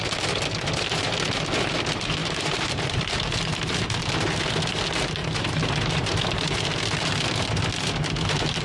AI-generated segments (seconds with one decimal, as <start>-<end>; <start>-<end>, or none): 2.2-4.1; 5.2-6.3